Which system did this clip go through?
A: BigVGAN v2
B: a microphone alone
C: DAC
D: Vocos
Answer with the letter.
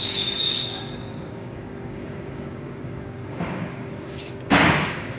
C